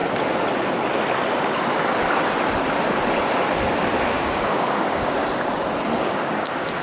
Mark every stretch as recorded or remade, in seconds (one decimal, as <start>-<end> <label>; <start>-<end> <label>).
0.0-4.1 recorded; 4.1-5.2 remade; 5.2-6.0 recorded; 6.0-6.8 remade